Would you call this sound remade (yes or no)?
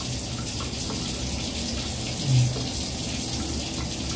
no